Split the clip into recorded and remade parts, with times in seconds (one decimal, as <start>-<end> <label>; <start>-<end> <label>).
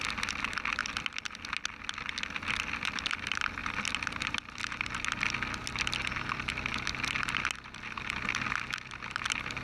0.0-9.6 recorded